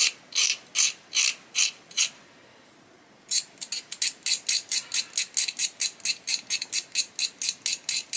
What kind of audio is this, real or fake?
real